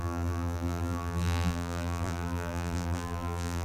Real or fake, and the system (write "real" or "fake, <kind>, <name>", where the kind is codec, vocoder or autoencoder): fake, vocoder, BigVGAN v2